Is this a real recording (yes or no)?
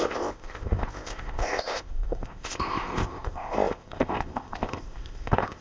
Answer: no